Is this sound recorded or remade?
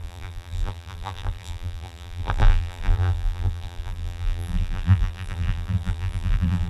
remade